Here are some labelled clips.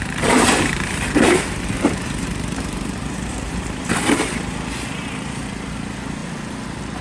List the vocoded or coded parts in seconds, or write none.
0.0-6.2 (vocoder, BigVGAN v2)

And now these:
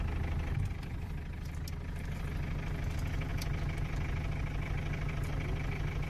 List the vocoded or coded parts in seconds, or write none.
none

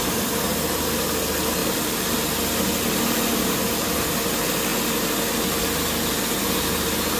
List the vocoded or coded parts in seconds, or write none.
none

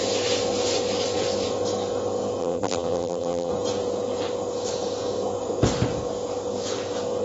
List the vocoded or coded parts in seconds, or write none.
2.4-3.5 (vocoder, BigVGAN v2)

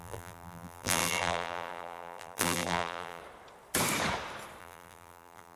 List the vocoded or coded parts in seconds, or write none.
0.0-3.2 (vocoder, BigVGAN v2); 4.6-5.6

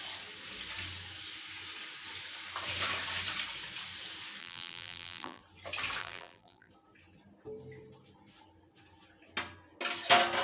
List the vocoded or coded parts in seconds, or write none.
4.4-5.4 (vocoder, BigVGAN v2); 6.0-6.7

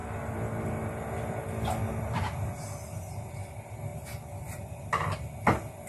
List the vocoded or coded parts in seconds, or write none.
3.9-4.6 (vocoder, BigVGAN v2)